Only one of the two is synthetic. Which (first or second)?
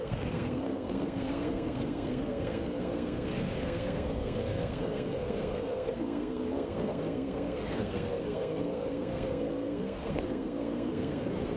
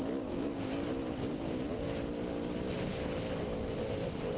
first